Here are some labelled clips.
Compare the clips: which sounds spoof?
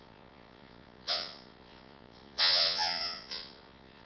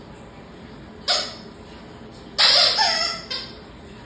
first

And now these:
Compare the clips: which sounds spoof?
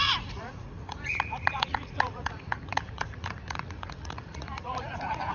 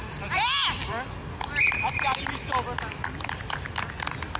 first